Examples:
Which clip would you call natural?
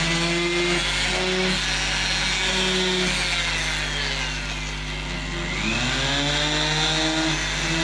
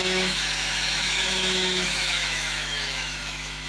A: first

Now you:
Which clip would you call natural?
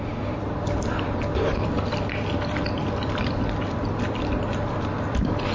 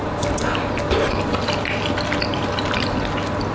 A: second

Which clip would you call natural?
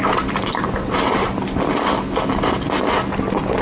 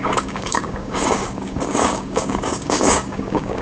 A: first